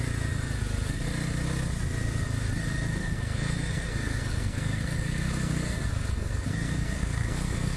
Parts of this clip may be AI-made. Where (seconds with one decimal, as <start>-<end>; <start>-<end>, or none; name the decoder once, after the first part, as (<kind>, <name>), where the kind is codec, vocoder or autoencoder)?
3.0-7.8 (codec, SNAC)